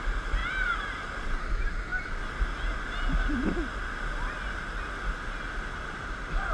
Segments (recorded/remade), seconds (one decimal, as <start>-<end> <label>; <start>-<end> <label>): 0.0-6.5 recorded

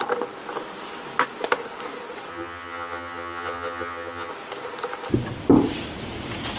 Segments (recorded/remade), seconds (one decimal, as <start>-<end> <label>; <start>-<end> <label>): 0.0-2.3 recorded; 2.3-4.3 remade; 4.3-6.6 recorded